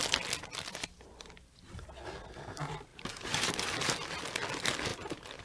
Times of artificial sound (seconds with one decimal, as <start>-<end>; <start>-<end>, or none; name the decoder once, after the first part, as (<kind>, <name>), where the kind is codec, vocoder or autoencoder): 2.9-3.5 (vocoder, BigVGAN v2); 4.9-5.4